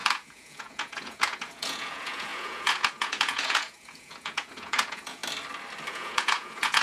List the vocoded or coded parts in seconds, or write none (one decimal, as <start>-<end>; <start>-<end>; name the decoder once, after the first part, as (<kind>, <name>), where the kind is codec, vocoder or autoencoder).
0.0-5.2 (vocoder, Vocos); 5.9-6.8